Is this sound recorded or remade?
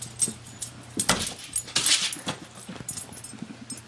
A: recorded